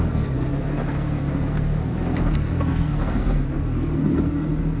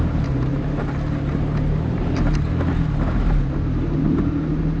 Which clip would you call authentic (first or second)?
second